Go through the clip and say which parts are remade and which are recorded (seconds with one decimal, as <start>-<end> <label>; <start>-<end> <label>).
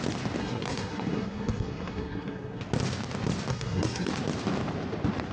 0.0-0.4 recorded; 0.4-2.6 remade; 2.6-3.5 recorded; 3.5-4.1 remade; 4.1-5.3 recorded